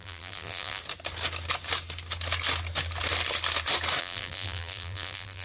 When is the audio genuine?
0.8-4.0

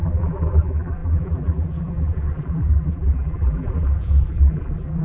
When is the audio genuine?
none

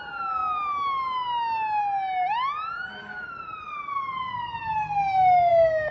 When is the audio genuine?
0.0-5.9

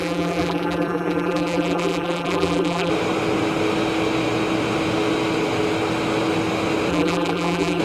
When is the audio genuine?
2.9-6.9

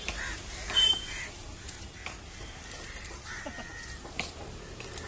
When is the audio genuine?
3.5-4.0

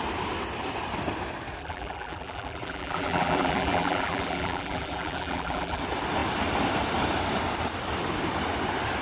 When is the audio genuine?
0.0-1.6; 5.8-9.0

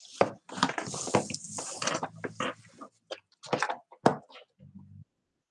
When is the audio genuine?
0.0-5.5

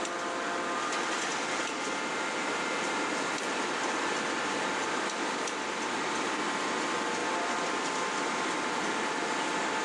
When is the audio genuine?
0.0-7.2; 9.1-9.8